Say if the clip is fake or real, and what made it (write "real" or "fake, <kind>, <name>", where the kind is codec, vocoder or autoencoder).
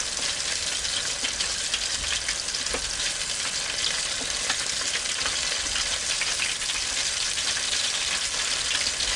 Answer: real